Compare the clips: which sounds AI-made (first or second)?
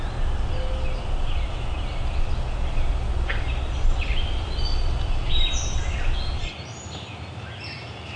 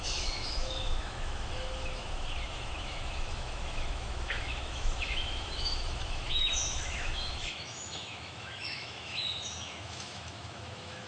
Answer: second